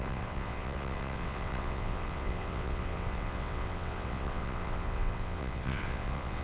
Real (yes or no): no